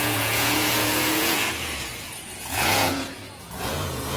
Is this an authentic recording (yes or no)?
no